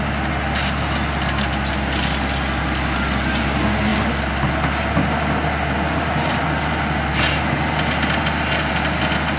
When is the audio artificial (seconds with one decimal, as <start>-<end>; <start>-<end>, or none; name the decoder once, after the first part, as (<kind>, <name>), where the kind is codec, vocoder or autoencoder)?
none